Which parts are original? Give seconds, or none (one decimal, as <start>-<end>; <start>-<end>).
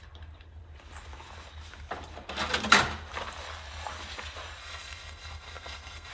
0.0-4.6